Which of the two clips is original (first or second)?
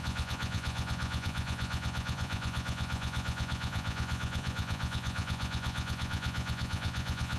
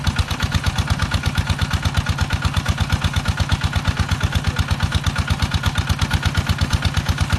second